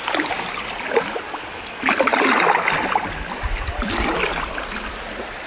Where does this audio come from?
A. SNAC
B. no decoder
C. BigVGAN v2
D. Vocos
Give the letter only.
B